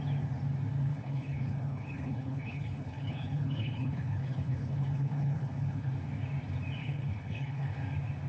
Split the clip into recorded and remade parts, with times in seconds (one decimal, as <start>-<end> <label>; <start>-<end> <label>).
0.0-0.9 recorded; 0.9-5.9 remade; 5.9-6.8 recorded; 6.8-7.8 remade; 7.8-8.3 recorded